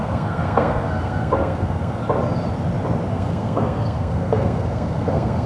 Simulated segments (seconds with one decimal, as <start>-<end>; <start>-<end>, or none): 0.0-2.0; 3.1-5.5